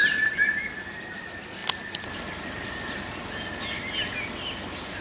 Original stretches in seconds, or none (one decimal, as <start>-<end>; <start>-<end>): 0.0-5.0